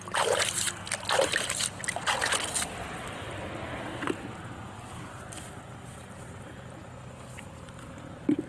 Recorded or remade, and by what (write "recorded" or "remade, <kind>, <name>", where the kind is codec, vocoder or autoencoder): recorded